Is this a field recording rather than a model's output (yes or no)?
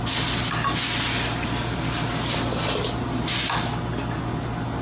yes